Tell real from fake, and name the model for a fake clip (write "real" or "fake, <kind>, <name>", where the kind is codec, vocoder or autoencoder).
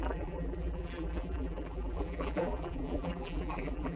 fake, vocoder, BigVGAN v2